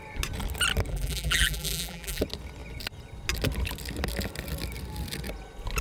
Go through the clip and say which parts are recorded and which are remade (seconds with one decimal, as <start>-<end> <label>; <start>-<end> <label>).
0.0-0.9 recorded; 0.9-2.2 remade; 2.2-5.8 recorded